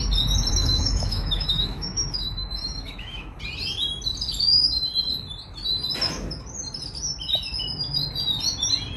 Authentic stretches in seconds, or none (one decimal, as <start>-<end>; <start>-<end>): 0.0-0.5; 3.4-9.0